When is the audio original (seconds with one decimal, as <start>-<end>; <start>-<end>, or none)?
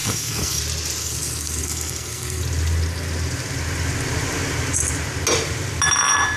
0.6-1.0; 2.4-6.4